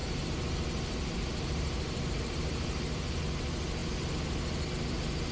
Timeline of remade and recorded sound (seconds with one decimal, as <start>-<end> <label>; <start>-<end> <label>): 0.0-3.2 remade; 3.2-5.3 recorded